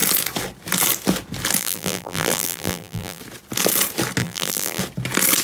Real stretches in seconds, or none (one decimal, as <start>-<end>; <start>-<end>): 0.0-1.6; 3.2-4.2; 4.8-5.4